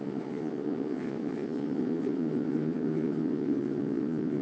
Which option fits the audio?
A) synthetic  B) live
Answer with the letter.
A